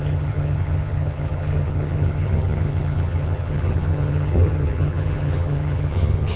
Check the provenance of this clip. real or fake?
fake